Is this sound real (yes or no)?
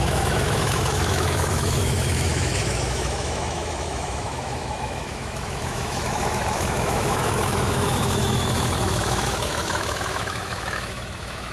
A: no